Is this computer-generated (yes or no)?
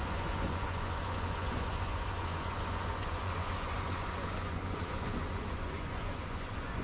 yes